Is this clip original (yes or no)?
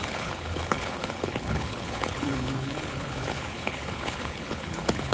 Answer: no